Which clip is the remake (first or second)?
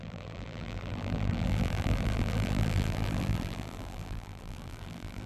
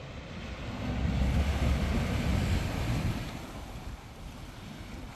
first